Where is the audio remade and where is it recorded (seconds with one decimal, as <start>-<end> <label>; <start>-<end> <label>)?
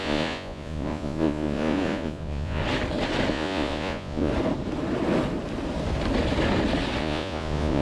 0.0-2.6 remade; 2.6-3.3 recorded; 3.3-4.3 remade; 4.3-7.0 recorded; 7.0-7.8 remade